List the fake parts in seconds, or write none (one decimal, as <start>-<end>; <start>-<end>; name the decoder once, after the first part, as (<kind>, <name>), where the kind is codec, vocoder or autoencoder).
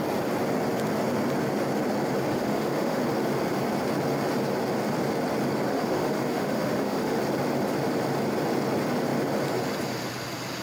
2.3-3.0 (autoencoder, DAC-VAE); 5.7-7.2